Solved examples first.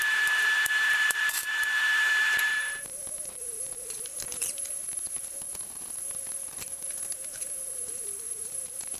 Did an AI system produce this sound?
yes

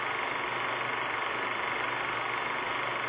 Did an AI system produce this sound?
no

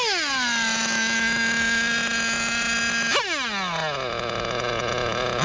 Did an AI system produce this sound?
no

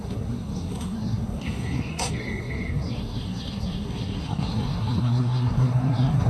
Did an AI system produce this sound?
yes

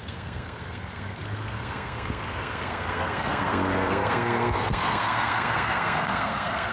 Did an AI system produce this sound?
yes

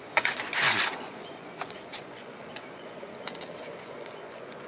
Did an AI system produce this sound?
yes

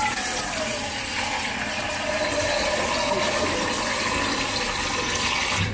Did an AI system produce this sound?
no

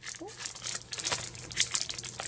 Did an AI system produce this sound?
no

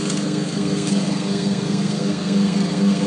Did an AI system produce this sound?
yes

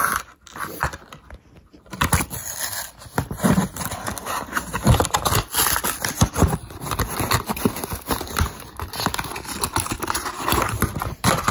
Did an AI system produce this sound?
no